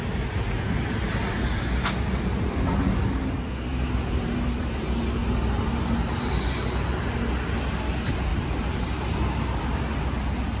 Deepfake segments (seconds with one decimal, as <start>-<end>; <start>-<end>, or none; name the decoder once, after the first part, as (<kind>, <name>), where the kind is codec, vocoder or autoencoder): 3.7-6.4 (vocoder, BigVGAN v2); 8.3-9.3